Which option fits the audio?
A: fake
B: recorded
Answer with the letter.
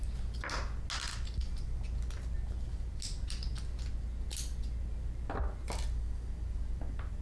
B